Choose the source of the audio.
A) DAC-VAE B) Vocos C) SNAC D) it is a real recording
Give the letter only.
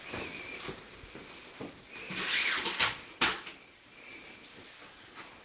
D